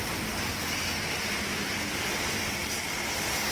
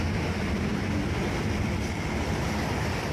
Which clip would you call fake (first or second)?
second